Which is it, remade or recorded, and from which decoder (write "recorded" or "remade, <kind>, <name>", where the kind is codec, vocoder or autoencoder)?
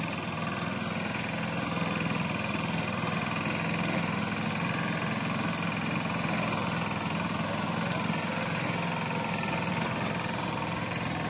recorded